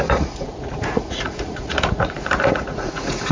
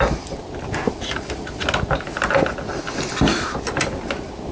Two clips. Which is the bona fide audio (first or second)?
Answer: second